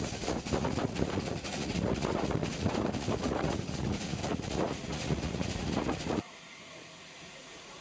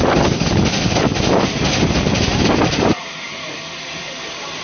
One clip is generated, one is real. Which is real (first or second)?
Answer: second